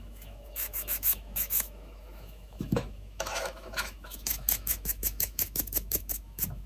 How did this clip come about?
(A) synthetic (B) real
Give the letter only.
A